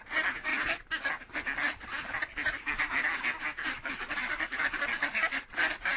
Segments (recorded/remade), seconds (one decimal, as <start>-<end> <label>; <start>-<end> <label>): 0.0-6.0 recorded